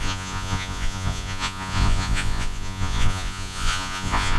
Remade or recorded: remade